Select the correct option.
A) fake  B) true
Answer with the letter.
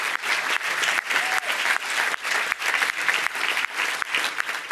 B